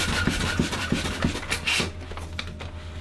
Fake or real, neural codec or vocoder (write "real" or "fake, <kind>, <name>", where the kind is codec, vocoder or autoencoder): real